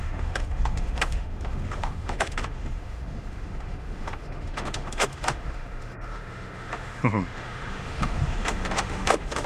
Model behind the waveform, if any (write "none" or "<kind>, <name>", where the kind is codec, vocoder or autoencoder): autoencoder, DAC-VAE